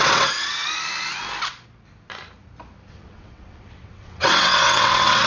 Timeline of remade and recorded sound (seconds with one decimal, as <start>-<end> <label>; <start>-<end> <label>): 0.0-0.6 remade; 0.6-2.9 recorded; 2.9-5.3 remade